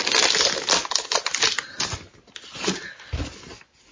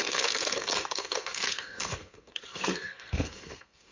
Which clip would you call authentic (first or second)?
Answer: first